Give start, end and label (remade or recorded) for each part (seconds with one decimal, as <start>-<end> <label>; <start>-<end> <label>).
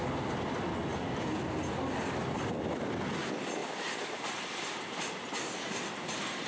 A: 0.0-3.6 recorded; 3.6-5.1 remade; 5.1-6.5 recorded